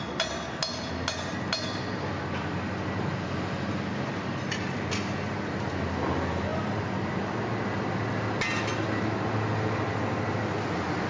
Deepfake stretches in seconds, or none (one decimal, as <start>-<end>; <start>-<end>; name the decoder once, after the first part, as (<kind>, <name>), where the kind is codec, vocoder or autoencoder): none